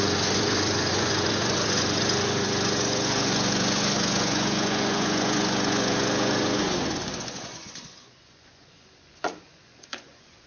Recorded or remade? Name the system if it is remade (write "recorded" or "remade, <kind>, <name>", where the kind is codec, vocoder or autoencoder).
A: remade, vocoder, Vocos